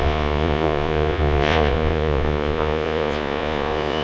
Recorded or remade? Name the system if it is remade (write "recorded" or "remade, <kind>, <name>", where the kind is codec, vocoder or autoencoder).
remade, vocoder, Vocos